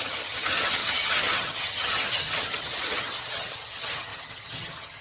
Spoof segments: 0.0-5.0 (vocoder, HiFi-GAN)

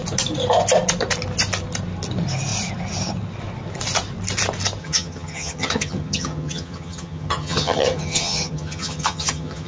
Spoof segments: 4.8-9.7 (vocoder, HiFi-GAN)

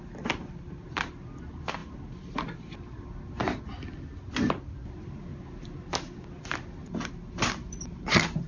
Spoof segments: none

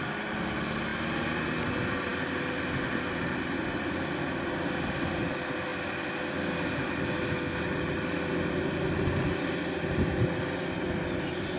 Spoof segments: none

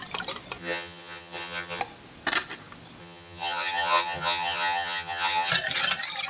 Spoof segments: 0.6-1.8 (vocoder, HiFi-GAN); 3.0-5.5

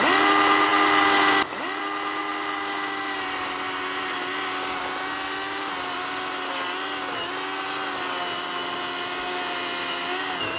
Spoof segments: none

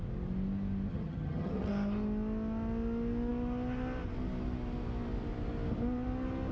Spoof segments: 0.9-1.7 (vocoder, HiFi-GAN)

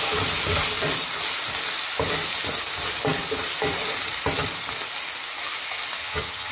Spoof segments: 6.0-6.5 (vocoder, HiFi-GAN)